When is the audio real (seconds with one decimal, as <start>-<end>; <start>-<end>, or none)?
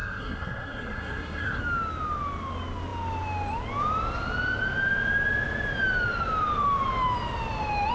1.6-7.9